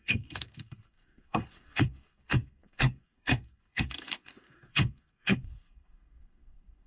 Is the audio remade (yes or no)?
yes